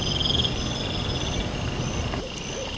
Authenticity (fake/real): real